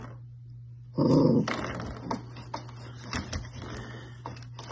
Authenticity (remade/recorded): recorded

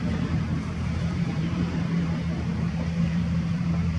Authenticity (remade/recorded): remade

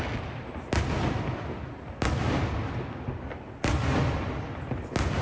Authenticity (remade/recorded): recorded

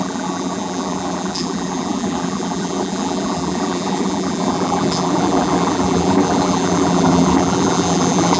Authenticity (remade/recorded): remade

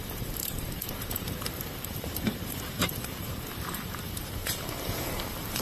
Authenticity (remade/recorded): remade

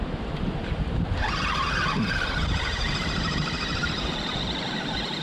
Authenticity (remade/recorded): remade